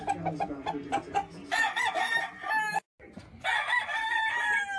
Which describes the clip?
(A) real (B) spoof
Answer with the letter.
A